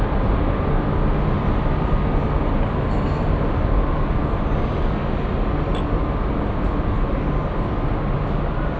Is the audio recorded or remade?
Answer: recorded